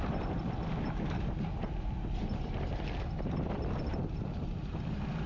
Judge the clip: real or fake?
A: real